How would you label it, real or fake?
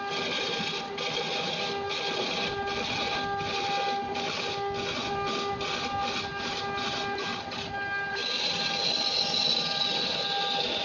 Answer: real